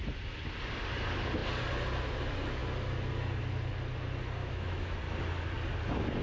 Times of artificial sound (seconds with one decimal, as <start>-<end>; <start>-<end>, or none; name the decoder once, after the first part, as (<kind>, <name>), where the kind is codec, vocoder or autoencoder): 4.4-5.0 (autoencoder, DAC-VAE)